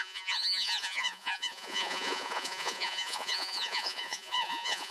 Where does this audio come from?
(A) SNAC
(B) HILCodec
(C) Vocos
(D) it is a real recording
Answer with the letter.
C